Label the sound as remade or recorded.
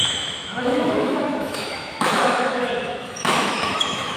remade